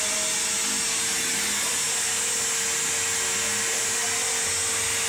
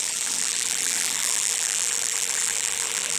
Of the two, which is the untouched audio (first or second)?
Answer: first